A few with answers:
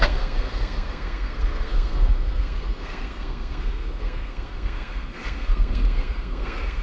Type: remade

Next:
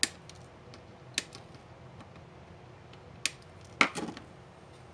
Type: recorded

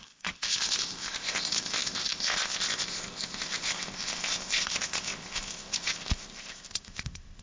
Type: remade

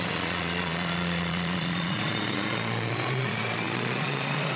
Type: remade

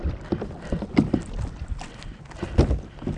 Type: recorded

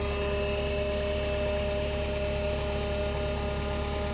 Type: recorded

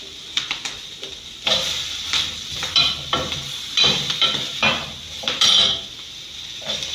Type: remade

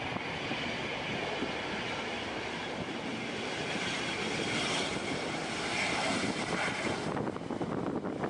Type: recorded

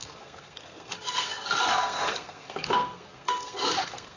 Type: remade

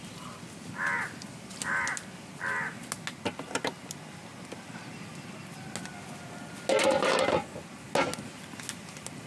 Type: recorded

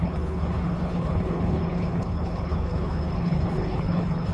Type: remade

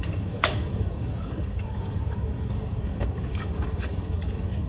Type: remade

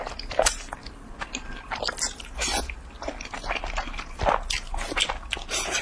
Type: recorded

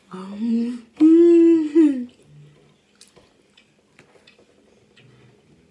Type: recorded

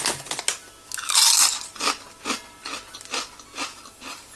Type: recorded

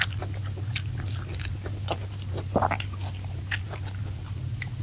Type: recorded